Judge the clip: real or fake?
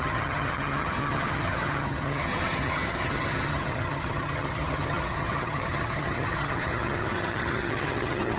fake